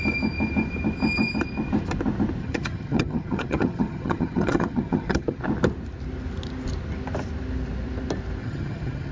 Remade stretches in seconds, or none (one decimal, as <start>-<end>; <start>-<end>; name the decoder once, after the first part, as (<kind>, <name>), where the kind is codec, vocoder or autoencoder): 2.4-5.4 (vocoder, HiFi-GAN); 8.4-9.1